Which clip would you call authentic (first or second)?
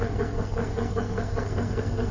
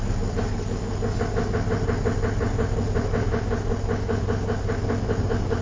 second